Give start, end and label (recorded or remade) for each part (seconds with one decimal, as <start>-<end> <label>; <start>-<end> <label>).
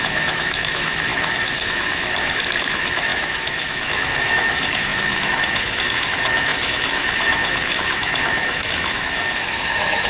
0.0-10.1 remade